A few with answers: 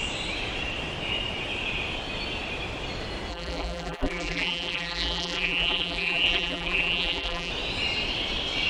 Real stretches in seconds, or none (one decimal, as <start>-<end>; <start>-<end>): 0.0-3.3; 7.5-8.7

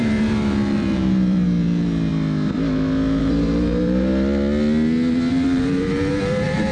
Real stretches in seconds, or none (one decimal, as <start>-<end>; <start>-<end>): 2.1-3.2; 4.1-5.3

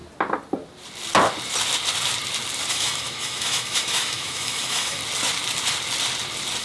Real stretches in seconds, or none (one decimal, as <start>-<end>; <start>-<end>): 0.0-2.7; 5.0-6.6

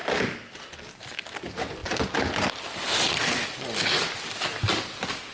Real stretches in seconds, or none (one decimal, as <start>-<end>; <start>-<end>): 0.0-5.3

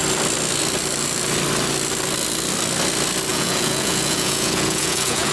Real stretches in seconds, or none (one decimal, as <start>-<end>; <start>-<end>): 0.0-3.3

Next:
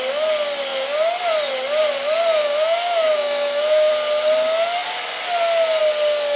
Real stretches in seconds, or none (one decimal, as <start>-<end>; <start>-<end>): 0.0-2.4; 3.9-6.4